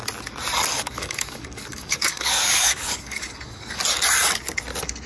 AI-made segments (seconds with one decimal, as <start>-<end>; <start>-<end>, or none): 0.7-3.8